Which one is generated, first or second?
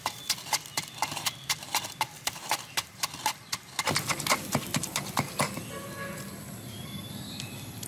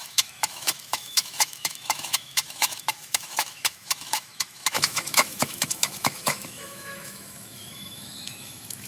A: second